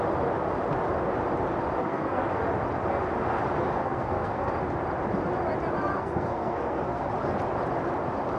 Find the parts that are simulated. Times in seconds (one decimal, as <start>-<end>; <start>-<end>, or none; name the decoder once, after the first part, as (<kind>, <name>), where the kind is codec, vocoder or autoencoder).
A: 1.8-2.4 (codec, SNAC); 3.8-4.5; 5.9-7.1